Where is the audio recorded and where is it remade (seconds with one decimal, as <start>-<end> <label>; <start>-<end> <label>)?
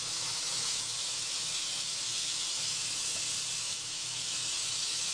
0.0-3.1 remade; 3.1-3.6 recorded; 3.6-5.1 remade